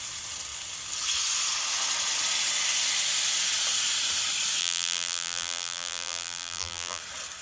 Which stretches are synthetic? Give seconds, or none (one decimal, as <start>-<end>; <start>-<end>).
4.6-7.0